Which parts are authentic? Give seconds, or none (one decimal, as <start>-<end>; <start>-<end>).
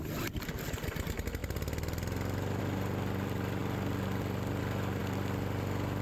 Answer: 0.0-6.0